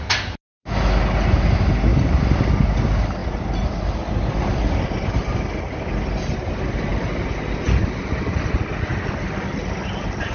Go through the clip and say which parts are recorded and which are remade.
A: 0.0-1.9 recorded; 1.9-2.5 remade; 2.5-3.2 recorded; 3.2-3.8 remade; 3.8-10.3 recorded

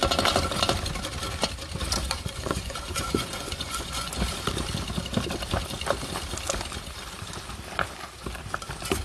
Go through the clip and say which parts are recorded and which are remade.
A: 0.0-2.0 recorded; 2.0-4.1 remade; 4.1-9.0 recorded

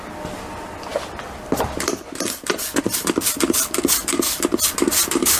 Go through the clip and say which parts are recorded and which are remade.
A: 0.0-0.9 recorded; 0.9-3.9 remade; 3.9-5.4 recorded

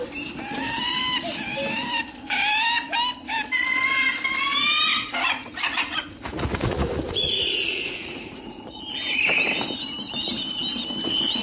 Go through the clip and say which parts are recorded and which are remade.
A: 0.0-4.9 recorded; 4.9-8.8 remade; 8.8-11.4 recorded